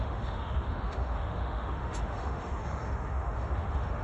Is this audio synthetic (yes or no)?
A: yes